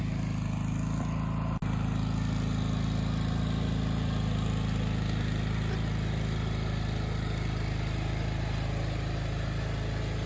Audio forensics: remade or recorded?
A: recorded